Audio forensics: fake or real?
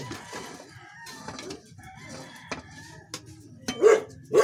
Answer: real